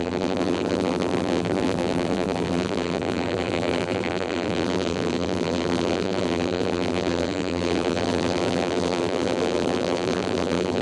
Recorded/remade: remade